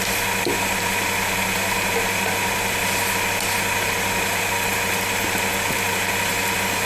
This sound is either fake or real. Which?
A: real